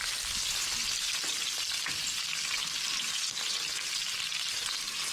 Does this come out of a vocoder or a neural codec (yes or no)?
no